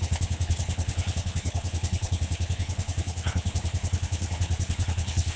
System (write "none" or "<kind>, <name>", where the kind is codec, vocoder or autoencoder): codec, HILCodec